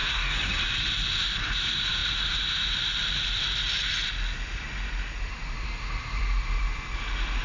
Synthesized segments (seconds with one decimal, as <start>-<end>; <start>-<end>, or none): 0.0-0.6